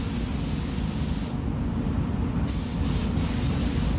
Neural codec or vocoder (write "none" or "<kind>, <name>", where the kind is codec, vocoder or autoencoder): none